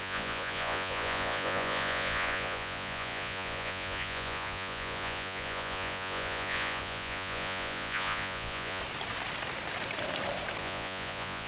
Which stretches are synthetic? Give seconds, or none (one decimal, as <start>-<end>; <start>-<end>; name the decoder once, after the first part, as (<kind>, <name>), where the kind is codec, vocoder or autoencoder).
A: 0.0-8.8 (vocoder, Vocos); 10.6-11.5